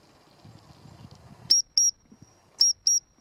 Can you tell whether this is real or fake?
real